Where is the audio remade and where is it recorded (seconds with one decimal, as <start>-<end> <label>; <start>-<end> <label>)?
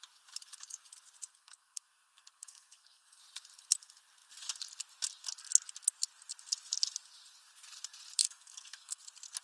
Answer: 0.0-1.3 recorded; 1.3-3.2 remade; 3.2-8.2 recorded; 8.2-9.0 remade; 9.0-9.4 recorded